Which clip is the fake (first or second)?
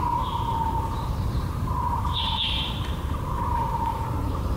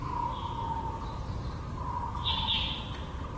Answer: first